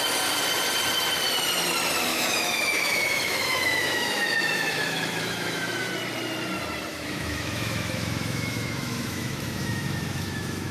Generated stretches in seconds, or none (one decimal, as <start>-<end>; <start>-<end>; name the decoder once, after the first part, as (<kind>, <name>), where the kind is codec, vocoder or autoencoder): 2.1-5.9 (autoencoder, DAC-VAE); 6.9-10.7